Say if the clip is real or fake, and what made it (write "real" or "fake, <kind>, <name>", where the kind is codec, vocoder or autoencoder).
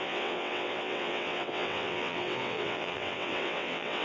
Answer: fake, vocoder, WaveNeXt